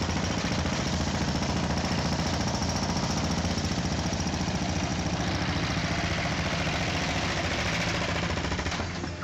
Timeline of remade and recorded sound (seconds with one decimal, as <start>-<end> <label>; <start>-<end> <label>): 0.0-9.2 recorded